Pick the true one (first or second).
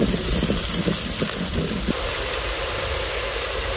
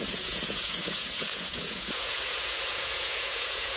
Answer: first